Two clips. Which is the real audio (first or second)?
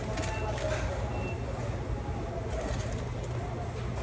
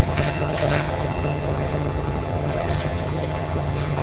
first